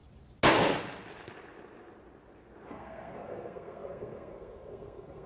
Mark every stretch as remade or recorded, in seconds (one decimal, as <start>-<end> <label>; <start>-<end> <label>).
0.0-2.7 recorded; 2.7-5.3 remade